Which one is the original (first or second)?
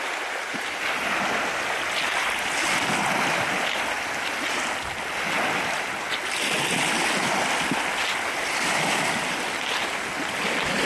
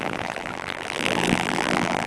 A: first